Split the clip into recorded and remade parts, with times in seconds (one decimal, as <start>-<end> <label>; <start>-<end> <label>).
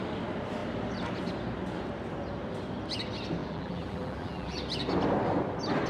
0.0-3.4 recorded; 3.4-4.6 remade; 4.6-5.9 recorded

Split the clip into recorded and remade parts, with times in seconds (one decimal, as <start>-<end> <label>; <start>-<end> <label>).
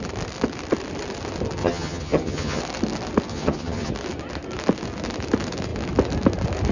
0.0-1.6 recorded; 1.6-2.6 remade; 2.6-3.3 recorded; 3.3-3.9 remade; 3.9-6.7 recorded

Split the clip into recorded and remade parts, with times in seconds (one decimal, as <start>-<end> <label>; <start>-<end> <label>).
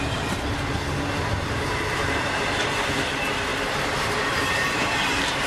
0.0-1.3 recorded; 1.3-2.7 remade; 2.7-3.5 recorded; 3.5-4.5 remade; 4.5-5.5 recorded